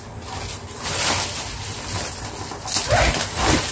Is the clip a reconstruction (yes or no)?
no